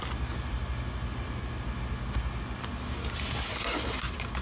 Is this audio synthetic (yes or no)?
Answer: no